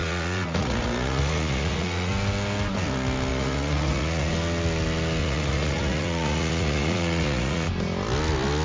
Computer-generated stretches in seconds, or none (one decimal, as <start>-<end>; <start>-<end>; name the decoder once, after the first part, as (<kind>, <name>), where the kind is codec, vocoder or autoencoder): 0.0-2.1 (vocoder, Vocos); 3.3-4.3; 5.2-7.7